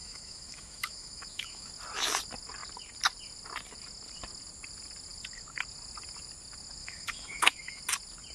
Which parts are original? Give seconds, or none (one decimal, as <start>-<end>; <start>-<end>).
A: 1.7-6.8; 7.8-8.3